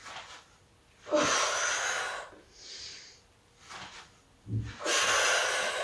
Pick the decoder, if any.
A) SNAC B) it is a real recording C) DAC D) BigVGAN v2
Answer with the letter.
B